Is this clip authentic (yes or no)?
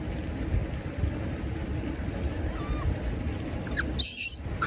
yes